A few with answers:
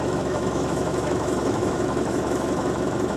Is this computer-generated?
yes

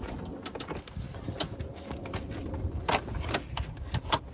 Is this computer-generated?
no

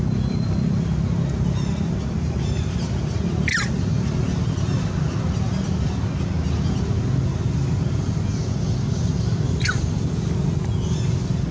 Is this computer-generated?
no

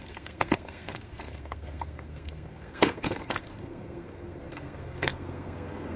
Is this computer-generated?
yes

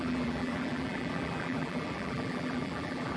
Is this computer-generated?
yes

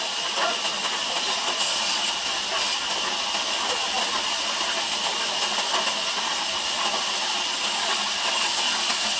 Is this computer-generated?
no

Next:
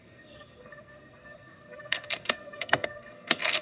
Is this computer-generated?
yes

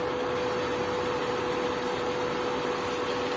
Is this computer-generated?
no